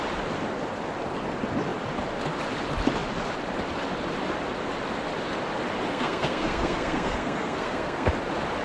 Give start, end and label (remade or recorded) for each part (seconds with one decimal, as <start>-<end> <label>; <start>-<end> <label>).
0.0-5.9 recorded; 5.9-8.1 remade; 8.1-8.6 recorded